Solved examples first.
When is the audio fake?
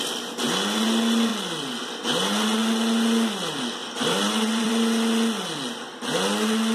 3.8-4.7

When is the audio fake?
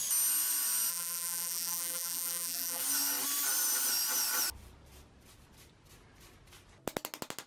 0.9-2.8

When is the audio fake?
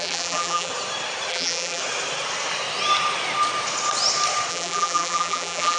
0.0-0.7; 1.3-1.8; 4.5-5.8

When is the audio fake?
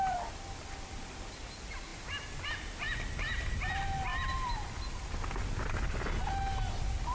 none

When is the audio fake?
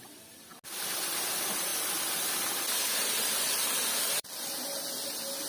1.7-4.3